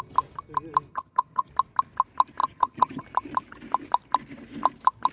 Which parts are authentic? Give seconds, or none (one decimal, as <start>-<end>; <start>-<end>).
0.0-0.9; 1.5-2.4; 3.0-5.1